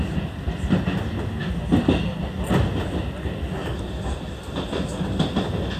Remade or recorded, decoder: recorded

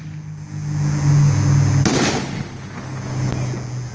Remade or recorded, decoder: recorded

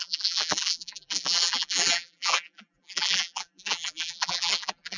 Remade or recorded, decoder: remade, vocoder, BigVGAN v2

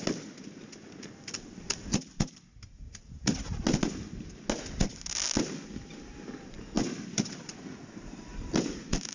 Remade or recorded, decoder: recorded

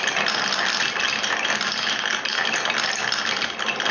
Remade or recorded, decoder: recorded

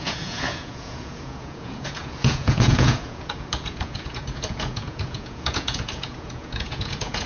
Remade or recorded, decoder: remade, vocoder, Vocos